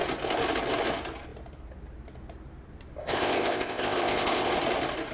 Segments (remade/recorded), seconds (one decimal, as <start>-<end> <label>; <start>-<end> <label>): 0.0-3.0 recorded; 3.0-4.5 remade; 4.5-5.1 recorded